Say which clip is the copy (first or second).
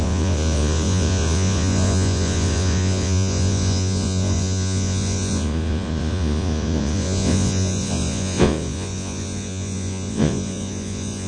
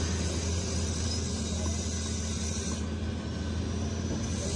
first